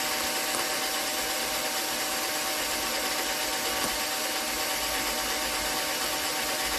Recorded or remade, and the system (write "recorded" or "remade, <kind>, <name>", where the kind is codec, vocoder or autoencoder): recorded